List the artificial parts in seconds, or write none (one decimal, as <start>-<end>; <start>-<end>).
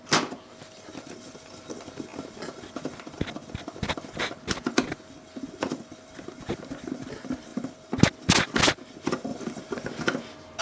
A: none